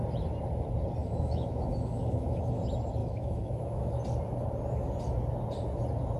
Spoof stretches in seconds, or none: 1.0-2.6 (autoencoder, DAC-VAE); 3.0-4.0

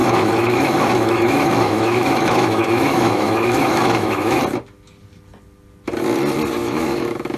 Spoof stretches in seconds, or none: 0.0-4.4 (autoencoder, DAC-VAE); 6.6-7.4

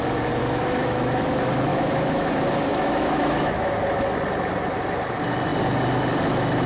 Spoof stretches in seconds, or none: 0.4-1.2 (autoencoder, DAC-VAE); 1.7-2.3; 2.7-3.8

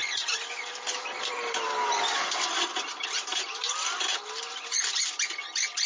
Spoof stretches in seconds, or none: none